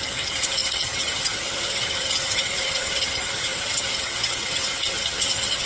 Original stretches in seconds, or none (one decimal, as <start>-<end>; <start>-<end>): none